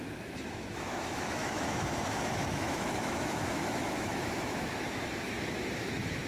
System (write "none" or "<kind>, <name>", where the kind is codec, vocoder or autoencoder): autoencoder, DAC-VAE